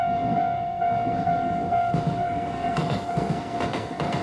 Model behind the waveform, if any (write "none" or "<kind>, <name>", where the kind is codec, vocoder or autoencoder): codec, SNAC